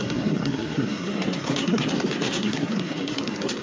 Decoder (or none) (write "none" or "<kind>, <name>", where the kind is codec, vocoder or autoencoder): codec, SNAC